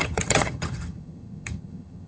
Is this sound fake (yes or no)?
yes